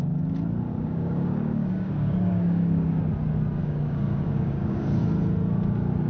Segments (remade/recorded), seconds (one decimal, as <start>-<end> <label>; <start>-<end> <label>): 0.0-0.7 recorded; 0.7-3.0 remade; 3.0-3.6 recorded; 3.6-5.0 remade; 5.0-6.1 recorded